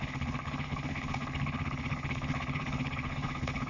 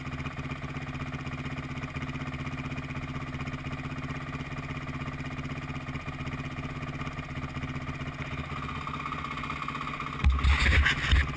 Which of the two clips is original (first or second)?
second